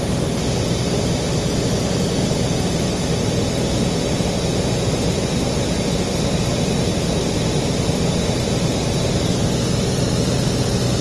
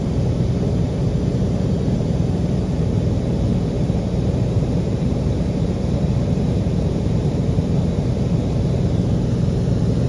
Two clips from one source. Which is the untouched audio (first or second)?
first